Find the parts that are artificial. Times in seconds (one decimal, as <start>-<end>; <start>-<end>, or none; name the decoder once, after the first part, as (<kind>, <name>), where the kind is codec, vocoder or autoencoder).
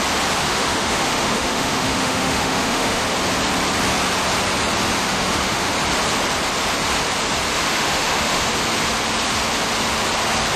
0.4-3.0 (autoencoder, DAC-VAE); 5.0-5.7; 7.5-8.5